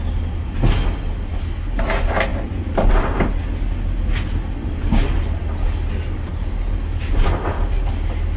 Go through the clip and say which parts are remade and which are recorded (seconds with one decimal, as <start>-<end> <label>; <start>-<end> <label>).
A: 0.0-8.4 recorded